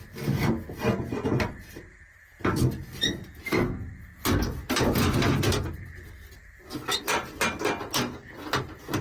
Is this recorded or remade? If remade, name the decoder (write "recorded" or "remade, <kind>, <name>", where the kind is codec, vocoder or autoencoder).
recorded